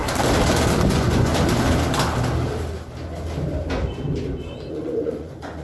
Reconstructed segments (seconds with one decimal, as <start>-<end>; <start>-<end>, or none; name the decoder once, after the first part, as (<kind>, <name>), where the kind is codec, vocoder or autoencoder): 0.9-1.3 (vocoder, Vocos); 4.7-5.6